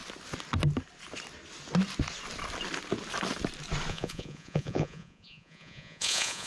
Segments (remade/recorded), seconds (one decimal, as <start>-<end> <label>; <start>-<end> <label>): 0.0-3.9 recorded; 3.9-6.5 remade